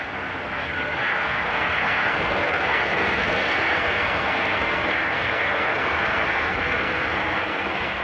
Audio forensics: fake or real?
fake